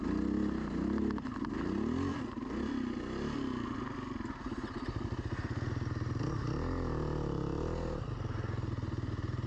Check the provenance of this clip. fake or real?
real